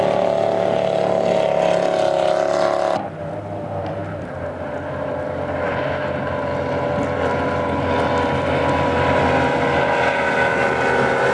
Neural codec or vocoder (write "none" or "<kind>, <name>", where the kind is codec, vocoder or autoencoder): none